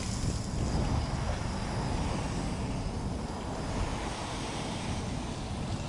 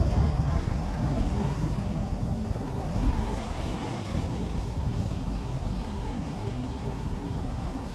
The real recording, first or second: first